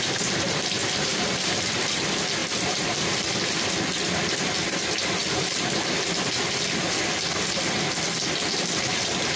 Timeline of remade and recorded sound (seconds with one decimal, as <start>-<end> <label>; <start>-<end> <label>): 0.0-2.4 recorded; 2.4-3.7 remade; 3.7-5.2 recorded; 5.2-7.7 remade; 7.7-9.4 recorded